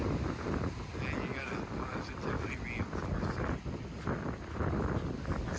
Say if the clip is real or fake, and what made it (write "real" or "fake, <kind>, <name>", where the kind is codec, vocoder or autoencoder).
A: real